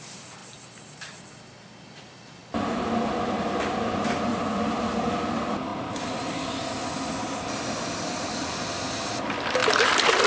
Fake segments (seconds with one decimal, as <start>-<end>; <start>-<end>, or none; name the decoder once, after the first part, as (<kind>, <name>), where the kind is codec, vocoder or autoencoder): 0.0-2.4 (vocoder, BigVGAN v2); 3.2-5.7; 8.5-10.3